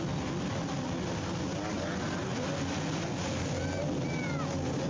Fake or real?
real